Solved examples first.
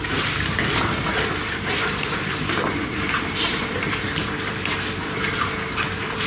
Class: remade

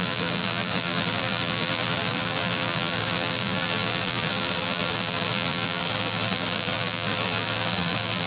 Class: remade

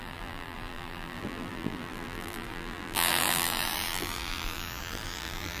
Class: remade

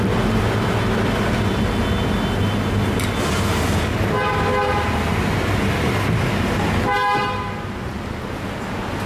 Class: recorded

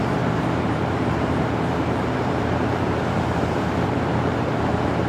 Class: remade